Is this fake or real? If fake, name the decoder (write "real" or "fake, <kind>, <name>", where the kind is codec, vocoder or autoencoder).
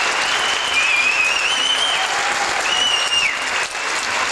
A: real